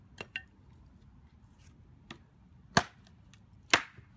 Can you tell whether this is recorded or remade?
recorded